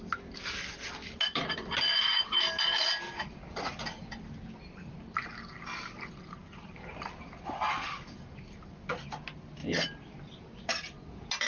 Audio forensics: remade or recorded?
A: recorded